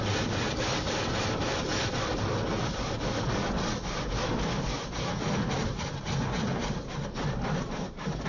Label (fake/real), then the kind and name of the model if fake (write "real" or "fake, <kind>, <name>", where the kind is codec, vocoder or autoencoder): real